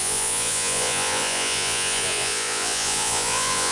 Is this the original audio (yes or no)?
no